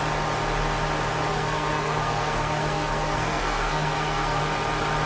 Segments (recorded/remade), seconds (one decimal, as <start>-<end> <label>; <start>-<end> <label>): 0.0-1.3 recorded; 1.3-4.4 remade; 4.4-5.1 recorded